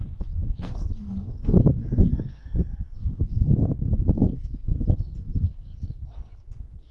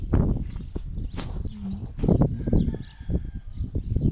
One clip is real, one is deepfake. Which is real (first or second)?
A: second